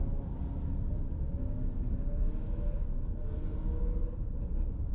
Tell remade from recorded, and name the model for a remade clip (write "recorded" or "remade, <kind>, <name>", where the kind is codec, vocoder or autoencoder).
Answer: recorded